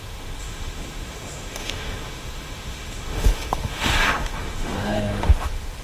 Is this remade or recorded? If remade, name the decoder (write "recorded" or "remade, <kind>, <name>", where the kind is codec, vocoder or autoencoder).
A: remade, autoencoder, DAC-VAE